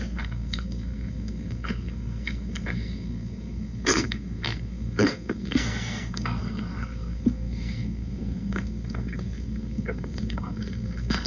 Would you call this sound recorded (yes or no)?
no